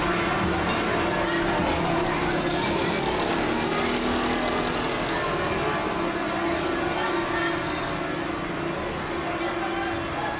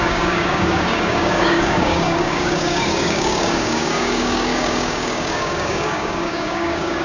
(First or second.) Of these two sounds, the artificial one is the second